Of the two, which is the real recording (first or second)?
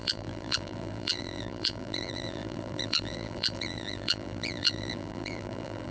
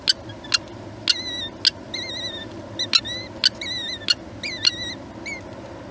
second